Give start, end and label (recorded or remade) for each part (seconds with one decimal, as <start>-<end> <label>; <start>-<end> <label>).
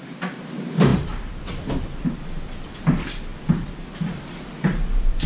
0.0-0.9 remade; 0.9-2.8 recorded; 2.8-3.3 remade; 3.3-5.3 recorded